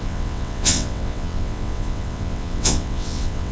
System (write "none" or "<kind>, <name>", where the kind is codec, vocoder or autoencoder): vocoder, WaveNeXt